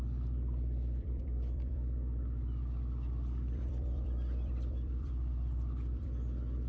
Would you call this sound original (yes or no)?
no